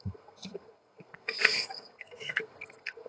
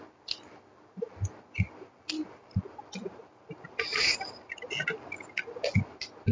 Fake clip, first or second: first